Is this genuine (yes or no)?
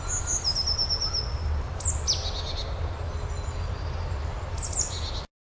yes